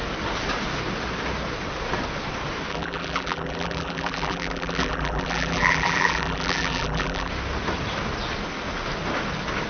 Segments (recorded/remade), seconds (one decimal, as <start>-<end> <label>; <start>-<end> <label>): 0.0-2.7 recorded; 2.7-7.3 remade; 7.3-9.7 recorded